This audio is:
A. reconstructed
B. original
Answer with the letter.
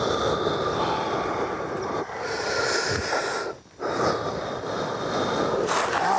B